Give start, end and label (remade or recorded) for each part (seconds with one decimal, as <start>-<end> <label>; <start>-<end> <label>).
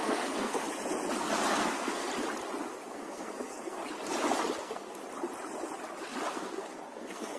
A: 0.0-0.6 remade; 0.6-1.5 recorded; 1.5-2.1 remade; 2.1-2.9 recorded; 2.9-3.8 remade; 3.8-4.6 recorded; 4.6-5.0 remade; 5.0-6.3 recorded; 6.3-7.4 remade